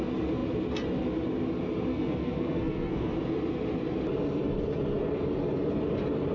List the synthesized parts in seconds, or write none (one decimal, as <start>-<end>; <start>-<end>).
1.9-3.1